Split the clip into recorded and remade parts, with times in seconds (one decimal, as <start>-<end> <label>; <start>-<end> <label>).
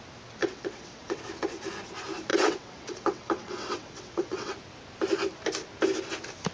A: 0.0-0.4 recorded; 0.4-1.2 remade; 1.2-2.3 recorded; 2.3-4.5 remade; 4.5-6.5 recorded